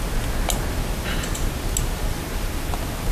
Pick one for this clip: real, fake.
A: real